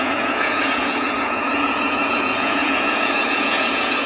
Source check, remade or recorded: remade